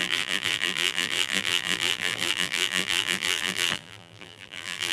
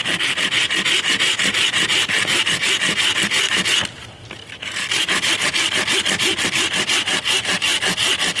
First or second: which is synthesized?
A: first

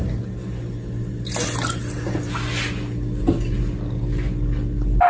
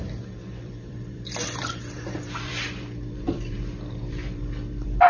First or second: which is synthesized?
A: second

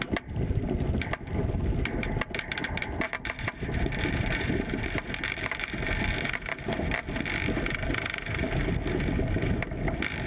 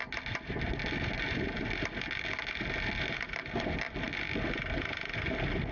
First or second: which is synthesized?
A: first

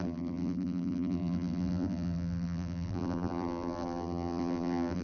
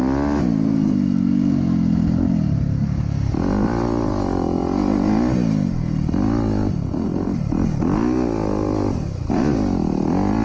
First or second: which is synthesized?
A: first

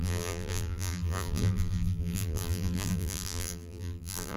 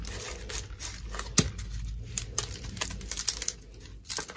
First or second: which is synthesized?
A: first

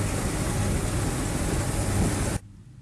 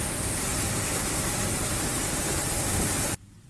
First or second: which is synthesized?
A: second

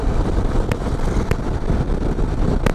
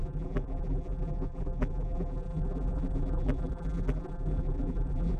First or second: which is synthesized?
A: second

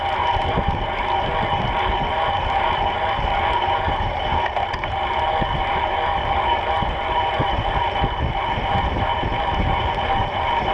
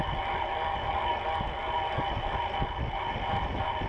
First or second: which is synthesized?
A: first